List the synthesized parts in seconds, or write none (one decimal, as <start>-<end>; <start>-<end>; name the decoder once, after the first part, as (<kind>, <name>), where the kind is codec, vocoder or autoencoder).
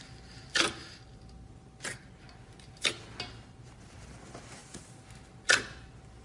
none